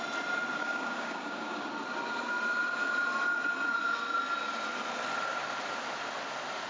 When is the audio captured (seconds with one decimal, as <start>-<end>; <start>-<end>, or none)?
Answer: 0.0-0.6; 1.7-6.7